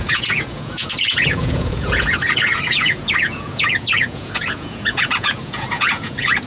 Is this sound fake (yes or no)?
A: yes